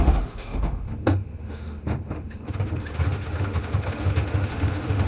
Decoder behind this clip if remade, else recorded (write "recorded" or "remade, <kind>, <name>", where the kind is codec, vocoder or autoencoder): remade, autoencoder, DAC-VAE